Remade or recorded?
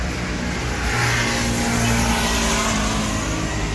recorded